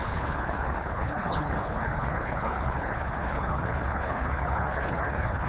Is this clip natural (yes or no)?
no